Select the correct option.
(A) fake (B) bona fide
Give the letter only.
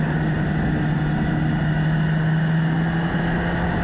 B